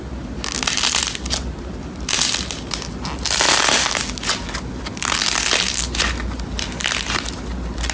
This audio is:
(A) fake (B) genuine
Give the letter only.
B